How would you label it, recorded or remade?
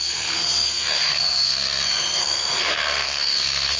remade